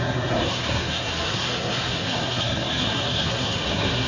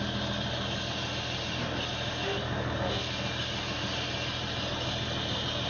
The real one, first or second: second